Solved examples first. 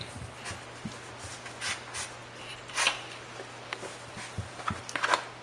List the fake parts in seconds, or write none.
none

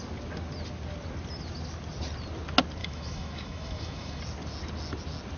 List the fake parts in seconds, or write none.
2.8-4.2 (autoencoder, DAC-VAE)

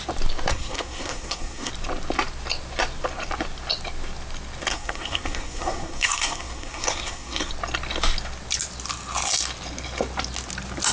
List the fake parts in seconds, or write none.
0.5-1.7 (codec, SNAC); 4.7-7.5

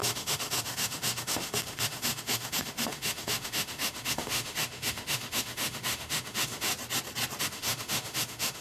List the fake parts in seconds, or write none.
0.0-6.7 (autoencoder, DAC-VAE); 7.4-8.6